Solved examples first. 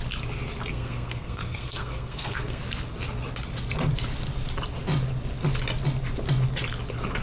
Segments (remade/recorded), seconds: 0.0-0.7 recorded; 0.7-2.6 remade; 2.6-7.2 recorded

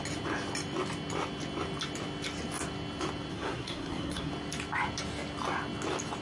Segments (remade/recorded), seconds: 0.0-3.3 recorded; 3.3-4.3 remade; 4.3-6.2 recorded

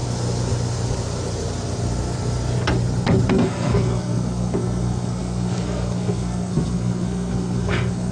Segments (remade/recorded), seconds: 0.0-3.3 recorded; 3.3-8.1 remade

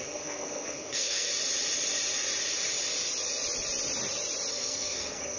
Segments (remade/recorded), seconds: 0.0-1.3 remade; 1.3-4.5 recorded; 4.5-5.4 remade

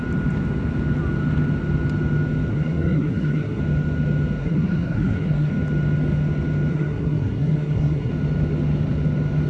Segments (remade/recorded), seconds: 0.0-2.5 recorded; 2.5-3.6 remade; 3.6-4.4 recorded; 4.4-5.5 remade; 5.5-6.7 recorded; 6.7-8.1 remade; 8.1-9.5 recorded